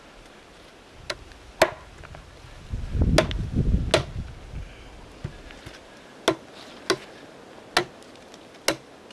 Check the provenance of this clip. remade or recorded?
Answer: recorded